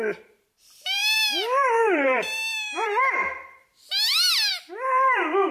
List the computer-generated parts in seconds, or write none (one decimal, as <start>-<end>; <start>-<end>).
0.0-3.7; 4.5-5.5